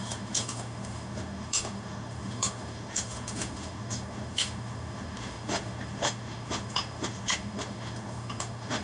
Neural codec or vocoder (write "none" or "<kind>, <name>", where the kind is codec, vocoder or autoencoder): autoencoder, DAC-VAE